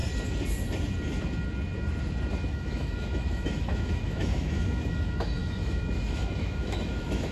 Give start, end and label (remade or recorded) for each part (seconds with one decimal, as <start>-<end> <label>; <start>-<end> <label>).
0.0-2.5 recorded; 2.5-7.3 remade